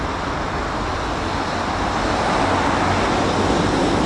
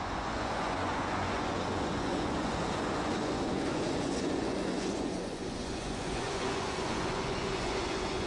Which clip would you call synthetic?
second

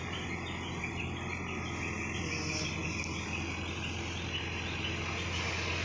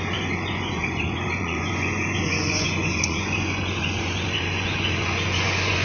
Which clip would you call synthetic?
second